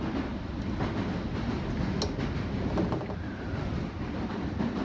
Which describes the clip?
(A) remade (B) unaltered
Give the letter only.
B